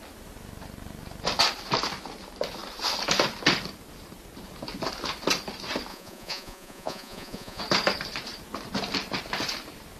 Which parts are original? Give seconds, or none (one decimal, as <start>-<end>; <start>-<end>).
0.0-5.9; 7.6-10.0